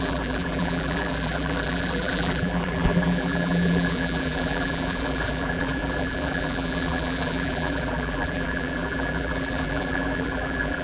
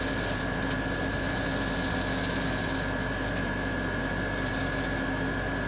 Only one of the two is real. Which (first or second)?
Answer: second